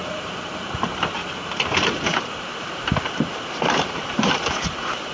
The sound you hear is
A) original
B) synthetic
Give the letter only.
B